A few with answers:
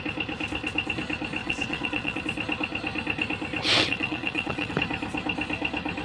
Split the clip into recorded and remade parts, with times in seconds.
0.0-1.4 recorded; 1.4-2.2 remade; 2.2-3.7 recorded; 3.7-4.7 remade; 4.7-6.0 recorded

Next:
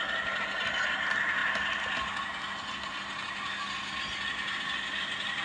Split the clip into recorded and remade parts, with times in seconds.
0.0-5.4 recorded